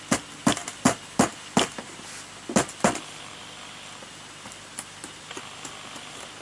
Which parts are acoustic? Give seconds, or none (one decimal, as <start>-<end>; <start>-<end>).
0.0-6.4